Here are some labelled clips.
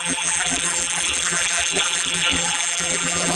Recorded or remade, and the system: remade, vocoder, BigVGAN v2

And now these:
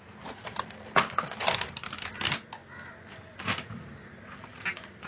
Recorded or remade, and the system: recorded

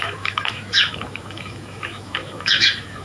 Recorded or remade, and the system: remade, autoencoder, DAC-VAE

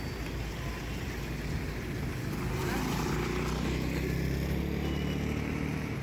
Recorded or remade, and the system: recorded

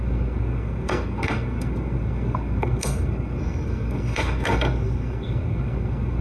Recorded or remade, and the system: remade, codec, SNAC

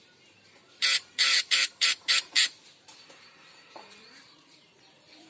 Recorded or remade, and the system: remade, vocoder, BigVGAN v2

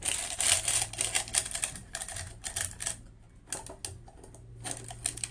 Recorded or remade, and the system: recorded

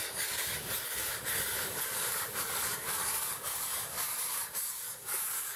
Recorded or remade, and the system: remade, codec, DAC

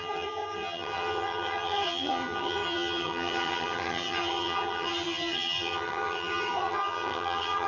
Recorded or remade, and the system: remade, vocoder, HiFi-GAN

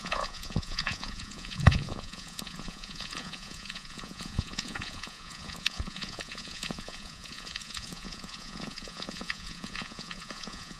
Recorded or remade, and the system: remade, vocoder, Vocos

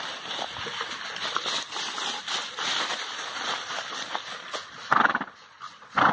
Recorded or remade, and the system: recorded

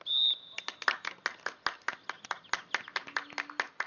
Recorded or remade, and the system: recorded